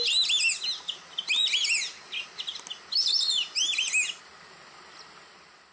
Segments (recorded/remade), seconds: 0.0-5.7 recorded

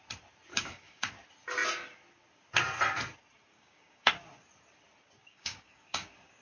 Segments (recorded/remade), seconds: 0.0-0.5 recorded; 0.5-1.1 remade; 1.1-3.5 recorded; 3.5-4.1 remade; 4.1-5.2 recorded; 5.2-6.4 remade

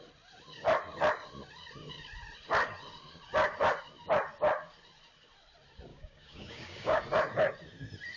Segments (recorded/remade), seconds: 0.0-5.9 recorded; 5.9-7.0 remade; 7.0-8.2 recorded

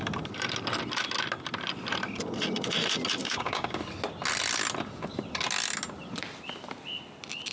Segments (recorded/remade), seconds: 0.0-3.2 recorded; 3.2-3.8 remade; 3.8-7.5 recorded

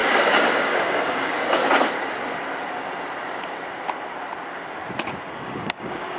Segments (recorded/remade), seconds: 0.0-1.6 remade; 1.6-5.3 recorded; 5.3-6.2 remade

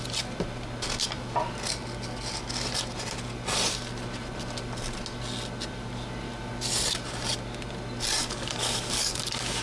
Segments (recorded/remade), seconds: 0.0-8.2 recorded; 8.2-9.6 remade